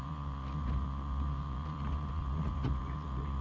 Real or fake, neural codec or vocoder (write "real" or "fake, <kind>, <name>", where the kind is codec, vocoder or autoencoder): fake, vocoder, Vocos